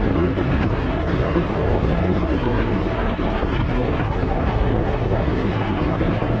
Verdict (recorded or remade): remade